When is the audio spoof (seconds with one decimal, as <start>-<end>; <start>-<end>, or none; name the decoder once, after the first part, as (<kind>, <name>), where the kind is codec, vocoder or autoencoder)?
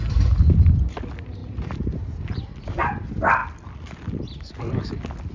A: 1.4-2.4 (vocoder, BigVGAN v2)